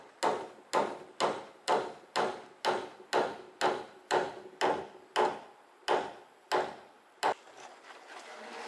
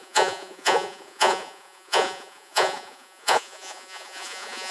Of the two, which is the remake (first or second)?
second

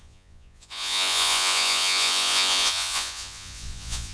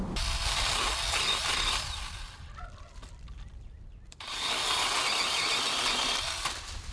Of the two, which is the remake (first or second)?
first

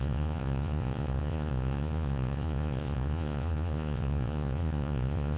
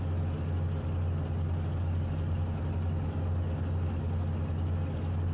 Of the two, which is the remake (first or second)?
first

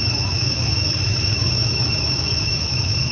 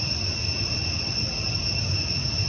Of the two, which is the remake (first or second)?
first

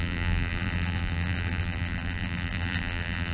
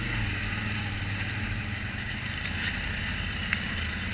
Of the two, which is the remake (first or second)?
first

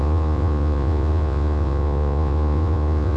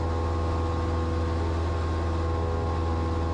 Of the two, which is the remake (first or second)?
first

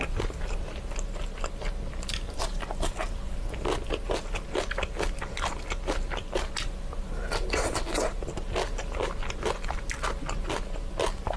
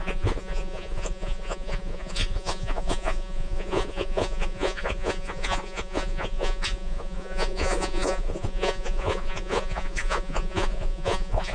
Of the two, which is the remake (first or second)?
second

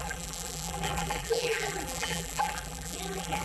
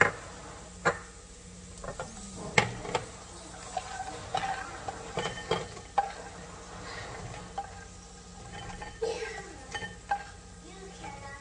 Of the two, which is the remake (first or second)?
first